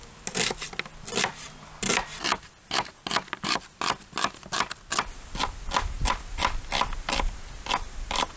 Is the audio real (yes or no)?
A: yes